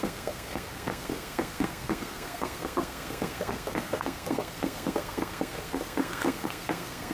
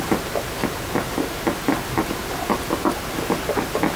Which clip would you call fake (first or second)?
first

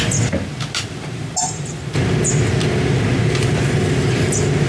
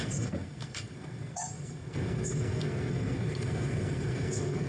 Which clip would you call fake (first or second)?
second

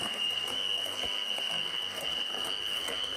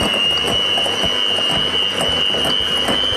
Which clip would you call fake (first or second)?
first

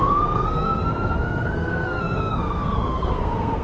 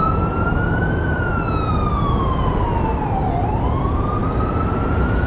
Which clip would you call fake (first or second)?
first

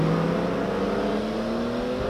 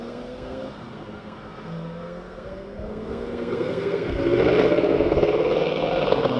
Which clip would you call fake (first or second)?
second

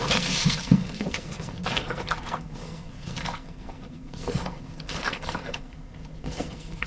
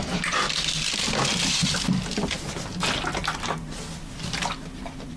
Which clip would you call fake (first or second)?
first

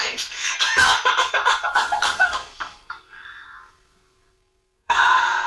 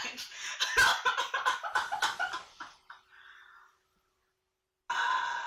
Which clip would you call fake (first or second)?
first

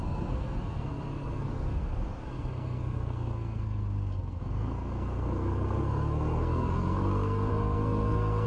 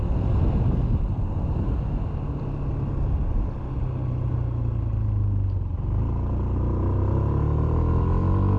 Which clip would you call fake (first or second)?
first